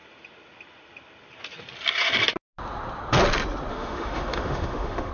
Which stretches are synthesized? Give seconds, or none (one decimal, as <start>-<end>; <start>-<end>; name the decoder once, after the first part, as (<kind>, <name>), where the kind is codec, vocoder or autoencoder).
3.7-5.1 (autoencoder, DAC-VAE)